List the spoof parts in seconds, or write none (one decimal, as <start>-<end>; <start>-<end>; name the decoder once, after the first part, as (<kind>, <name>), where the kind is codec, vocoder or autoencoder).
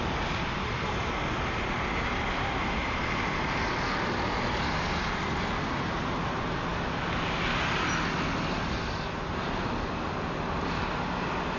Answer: none